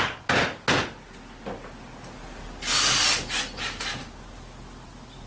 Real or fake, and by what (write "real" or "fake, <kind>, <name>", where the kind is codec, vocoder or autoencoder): real